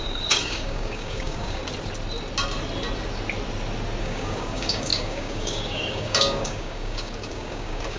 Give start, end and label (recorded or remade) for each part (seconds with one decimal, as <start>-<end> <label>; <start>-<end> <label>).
0.0-1.6 remade; 1.6-4.0 recorded; 4.0-8.0 remade